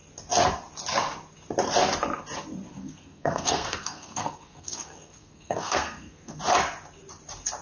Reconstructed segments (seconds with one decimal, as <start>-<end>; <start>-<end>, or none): 2.7-6.4